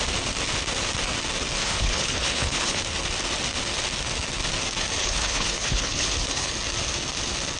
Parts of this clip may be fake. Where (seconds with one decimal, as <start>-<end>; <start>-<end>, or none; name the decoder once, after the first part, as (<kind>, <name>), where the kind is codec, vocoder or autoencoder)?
1.6-2.8 (codec, HILCodec); 5.0-6.5

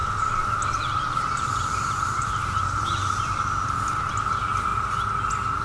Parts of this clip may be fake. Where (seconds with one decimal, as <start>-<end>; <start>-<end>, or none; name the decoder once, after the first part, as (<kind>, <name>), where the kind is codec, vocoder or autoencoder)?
0.0-3.4 (vocoder, BigVGAN v2)

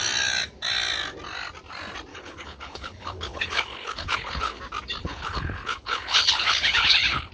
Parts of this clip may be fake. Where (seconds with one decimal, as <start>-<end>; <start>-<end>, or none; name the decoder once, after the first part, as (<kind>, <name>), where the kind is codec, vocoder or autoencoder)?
2.1-4.6 (codec, HILCodec); 5.0-7.3

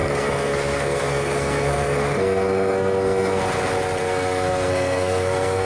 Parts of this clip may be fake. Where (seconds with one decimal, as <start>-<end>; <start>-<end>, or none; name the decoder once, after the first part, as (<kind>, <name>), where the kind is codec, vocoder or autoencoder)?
0.0-3.4 (codec, SNAC); 4.0-5.7